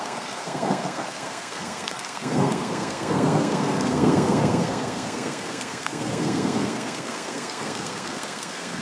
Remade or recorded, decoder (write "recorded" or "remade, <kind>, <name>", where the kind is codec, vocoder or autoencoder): remade, codec, SNAC